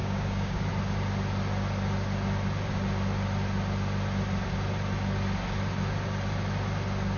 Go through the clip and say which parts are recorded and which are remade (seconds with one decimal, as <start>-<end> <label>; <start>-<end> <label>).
0.0-0.6 remade; 0.6-7.2 recorded